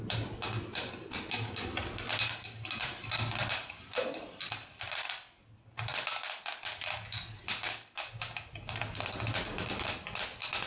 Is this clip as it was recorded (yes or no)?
yes